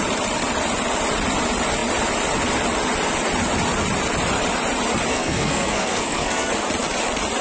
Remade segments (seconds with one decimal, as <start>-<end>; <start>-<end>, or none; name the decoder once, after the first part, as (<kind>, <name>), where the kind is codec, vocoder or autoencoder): 5.1-6.5 (codec, SNAC)